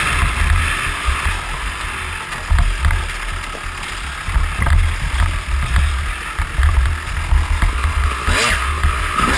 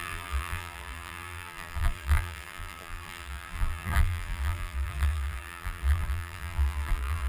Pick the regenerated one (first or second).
second